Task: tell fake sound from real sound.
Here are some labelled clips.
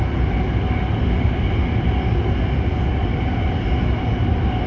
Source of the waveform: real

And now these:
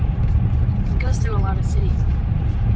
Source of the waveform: fake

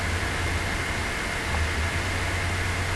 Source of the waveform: real